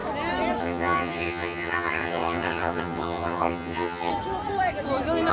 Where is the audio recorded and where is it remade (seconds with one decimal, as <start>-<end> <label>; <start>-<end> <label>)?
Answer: 0.0-0.6 recorded; 0.6-4.1 remade; 4.1-5.3 recorded